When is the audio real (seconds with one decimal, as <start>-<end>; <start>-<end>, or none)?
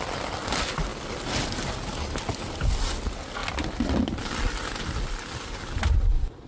0.0-6.5